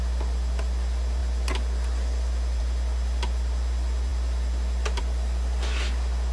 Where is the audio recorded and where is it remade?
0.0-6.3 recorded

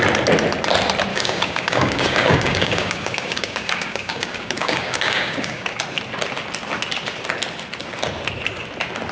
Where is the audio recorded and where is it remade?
0.0-1.1 recorded; 1.1-5.8 remade; 5.8-9.1 recorded

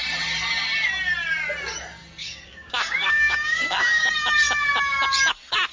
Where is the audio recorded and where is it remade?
0.0-2.2 recorded; 2.2-4.1 remade; 4.1-5.7 recorded

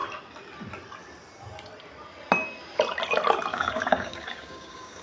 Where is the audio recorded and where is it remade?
0.0-3.5 recorded; 3.5-5.0 remade

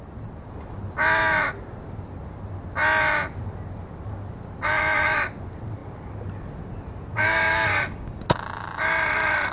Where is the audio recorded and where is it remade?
0.0-7.1 recorded; 7.1-8.2 remade; 8.2-9.5 recorded

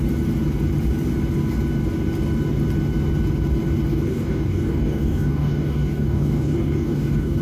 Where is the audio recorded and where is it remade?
0.0-3.9 recorded; 3.9-7.4 remade

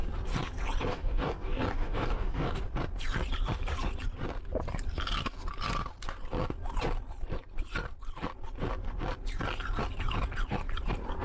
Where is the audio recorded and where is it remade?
0.0-0.9 recorded; 0.9-2.6 remade; 2.6-11.2 recorded